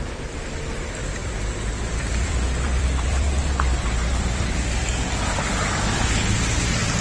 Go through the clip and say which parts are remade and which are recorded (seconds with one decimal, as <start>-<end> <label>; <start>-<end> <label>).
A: 0.0-1.2 remade; 1.2-1.8 recorded; 1.8-7.0 remade